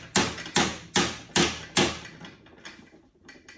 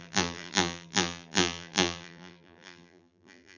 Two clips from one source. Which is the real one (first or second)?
first